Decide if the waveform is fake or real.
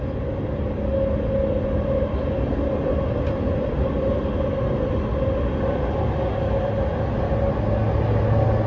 real